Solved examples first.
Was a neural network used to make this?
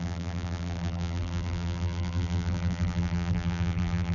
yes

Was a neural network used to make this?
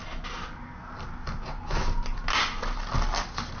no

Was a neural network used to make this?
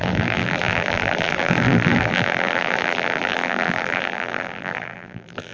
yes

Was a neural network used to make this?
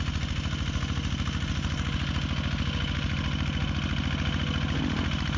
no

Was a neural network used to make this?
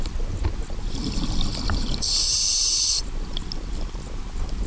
no